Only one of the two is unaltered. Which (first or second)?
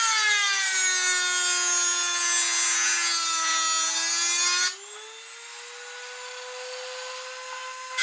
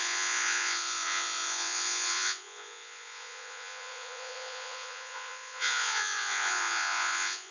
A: first